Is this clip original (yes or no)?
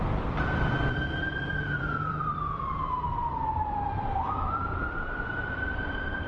no